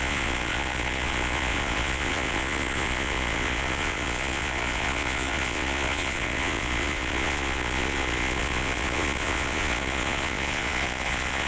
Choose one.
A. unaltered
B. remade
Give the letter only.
B